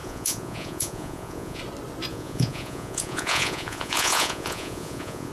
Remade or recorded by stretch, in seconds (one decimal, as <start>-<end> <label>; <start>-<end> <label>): 0.0-1.6 remade; 1.6-2.1 recorded; 2.1-5.3 remade